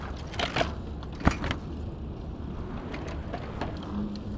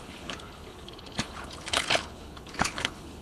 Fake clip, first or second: second